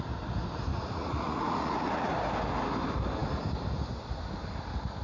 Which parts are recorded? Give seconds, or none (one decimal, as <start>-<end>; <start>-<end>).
0.0-0.7; 2.1-5.0